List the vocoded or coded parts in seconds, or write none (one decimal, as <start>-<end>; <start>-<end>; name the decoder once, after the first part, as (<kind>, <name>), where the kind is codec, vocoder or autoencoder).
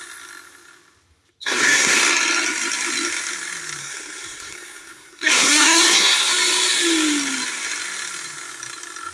1.4-2.0 (codec, SNAC); 3.8-6.3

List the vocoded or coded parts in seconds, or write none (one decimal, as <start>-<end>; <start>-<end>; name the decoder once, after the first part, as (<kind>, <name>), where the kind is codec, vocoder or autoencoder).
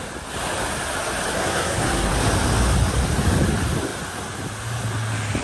1.3-2.1 (codec, SNAC)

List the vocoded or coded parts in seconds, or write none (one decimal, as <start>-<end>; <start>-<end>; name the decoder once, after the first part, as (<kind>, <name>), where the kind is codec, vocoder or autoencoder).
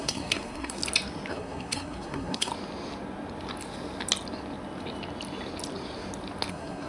0.0-0.8 (codec, SNAC); 1.3-2.5; 6.5-6.9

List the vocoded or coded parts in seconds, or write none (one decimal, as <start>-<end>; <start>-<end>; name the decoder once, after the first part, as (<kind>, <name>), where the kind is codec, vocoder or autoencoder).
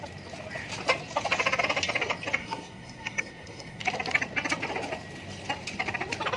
2.4-3.8 (codec, SNAC)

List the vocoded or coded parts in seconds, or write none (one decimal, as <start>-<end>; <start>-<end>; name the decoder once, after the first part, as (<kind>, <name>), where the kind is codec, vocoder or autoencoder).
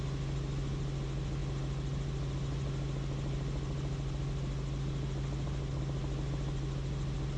none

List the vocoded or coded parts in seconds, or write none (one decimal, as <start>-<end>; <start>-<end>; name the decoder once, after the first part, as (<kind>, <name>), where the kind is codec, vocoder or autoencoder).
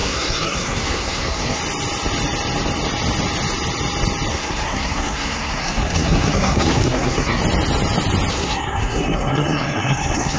0.0-1.6 (codec, SNAC); 4.3-7.4; 8.3-10.4